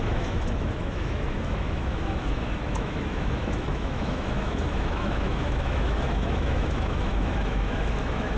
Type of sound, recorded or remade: remade